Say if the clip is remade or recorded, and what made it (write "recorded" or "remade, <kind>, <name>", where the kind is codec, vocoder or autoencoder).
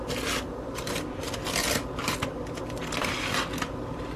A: recorded